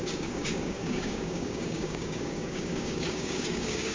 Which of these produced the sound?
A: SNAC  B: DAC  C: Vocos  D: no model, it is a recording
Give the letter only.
B